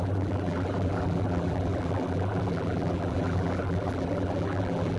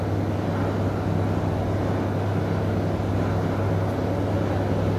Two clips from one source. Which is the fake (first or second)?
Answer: first